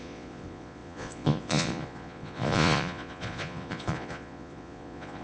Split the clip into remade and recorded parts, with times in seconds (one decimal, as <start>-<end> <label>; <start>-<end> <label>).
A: 0.0-5.2 remade